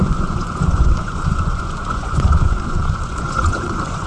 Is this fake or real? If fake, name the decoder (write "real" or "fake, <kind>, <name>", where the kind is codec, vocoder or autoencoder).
fake, vocoder, Vocos